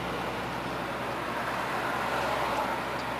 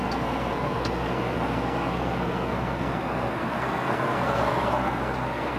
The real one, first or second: first